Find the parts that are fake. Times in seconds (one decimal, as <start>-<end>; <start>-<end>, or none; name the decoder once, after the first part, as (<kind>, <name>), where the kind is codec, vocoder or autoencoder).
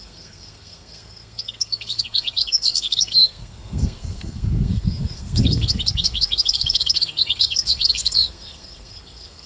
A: 0.0-9.5 (codec, SNAC)